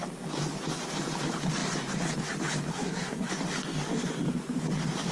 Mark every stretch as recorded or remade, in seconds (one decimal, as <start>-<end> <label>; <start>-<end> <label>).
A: 0.0-2.7 recorded; 2.7-3.3 remade; 3.3-5.1 recorded